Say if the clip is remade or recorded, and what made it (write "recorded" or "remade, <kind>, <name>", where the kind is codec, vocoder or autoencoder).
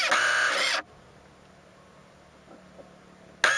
recorded